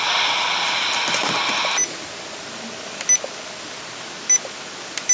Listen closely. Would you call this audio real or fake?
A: real